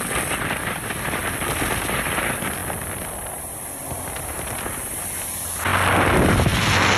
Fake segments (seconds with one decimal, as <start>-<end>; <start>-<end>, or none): none